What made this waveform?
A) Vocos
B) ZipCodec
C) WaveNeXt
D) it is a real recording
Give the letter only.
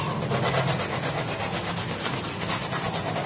D